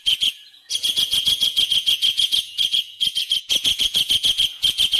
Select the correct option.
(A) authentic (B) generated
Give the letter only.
B